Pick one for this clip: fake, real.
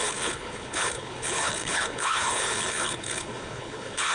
fake